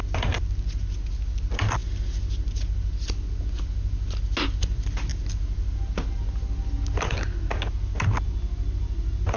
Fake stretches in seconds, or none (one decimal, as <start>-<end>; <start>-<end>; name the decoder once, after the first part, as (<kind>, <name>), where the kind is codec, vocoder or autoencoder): none